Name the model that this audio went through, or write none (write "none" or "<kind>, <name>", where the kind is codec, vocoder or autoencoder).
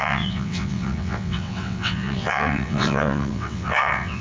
vocoder, WaveNeXt